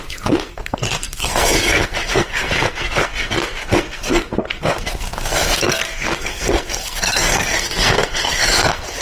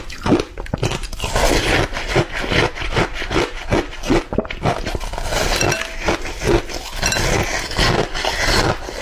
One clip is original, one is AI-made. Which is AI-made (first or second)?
first